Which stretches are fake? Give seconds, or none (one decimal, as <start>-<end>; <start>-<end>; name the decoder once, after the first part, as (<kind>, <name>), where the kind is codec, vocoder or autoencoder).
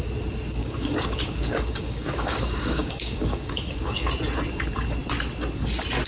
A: 0.6-4.1 (codec, DAC)